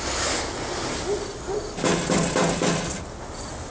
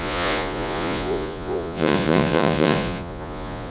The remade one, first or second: second